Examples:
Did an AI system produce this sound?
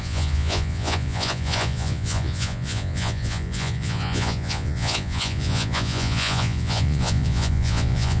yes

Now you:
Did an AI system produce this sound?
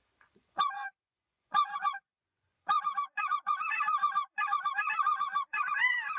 yes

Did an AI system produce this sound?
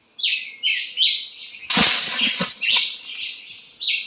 no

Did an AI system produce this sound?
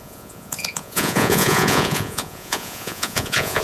yes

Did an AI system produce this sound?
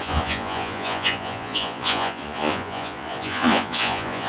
yes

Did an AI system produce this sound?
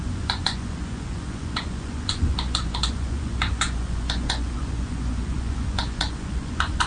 yes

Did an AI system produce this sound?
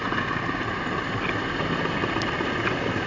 no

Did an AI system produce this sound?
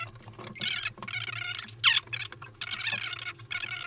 no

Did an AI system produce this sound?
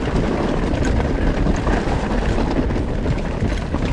no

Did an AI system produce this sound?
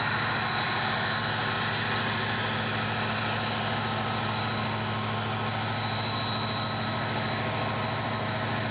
no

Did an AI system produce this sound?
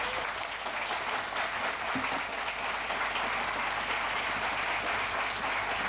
no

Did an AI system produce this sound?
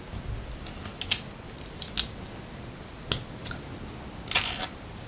no